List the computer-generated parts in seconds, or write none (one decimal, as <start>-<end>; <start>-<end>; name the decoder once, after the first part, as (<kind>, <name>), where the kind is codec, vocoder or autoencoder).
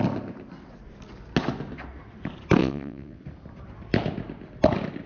2.6-3.2 (vocoder, WaveNeXt)